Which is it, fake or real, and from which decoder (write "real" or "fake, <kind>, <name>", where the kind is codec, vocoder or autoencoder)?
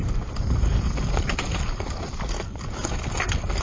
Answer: real